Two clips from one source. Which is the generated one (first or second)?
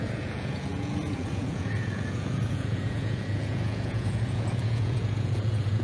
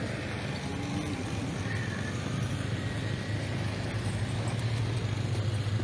first